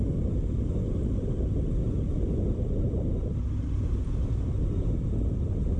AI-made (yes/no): no